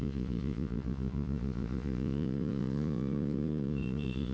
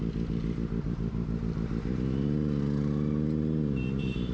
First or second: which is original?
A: second